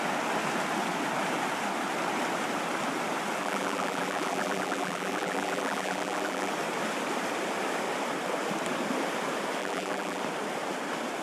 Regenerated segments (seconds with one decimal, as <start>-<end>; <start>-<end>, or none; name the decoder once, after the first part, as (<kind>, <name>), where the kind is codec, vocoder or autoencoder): 3.4-6.5 (vocoder, BigVGAN v2); 9.6-10.2